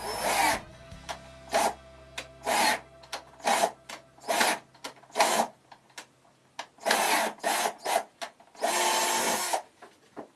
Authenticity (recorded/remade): recorded